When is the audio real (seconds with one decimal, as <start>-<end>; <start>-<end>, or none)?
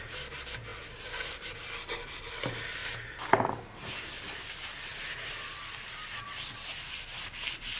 0.0-7.8